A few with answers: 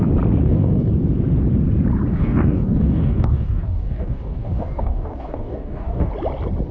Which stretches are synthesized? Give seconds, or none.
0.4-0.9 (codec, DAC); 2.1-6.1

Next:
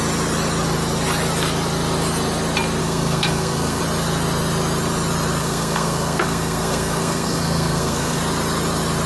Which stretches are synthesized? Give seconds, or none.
2.8-3.8 (codec, SNAC); 5.4-8.2

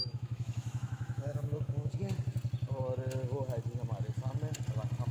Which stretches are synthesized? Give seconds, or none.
0.0-1.9 (autoencoder, DAC-VAE)